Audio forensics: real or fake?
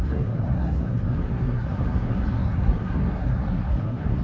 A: fake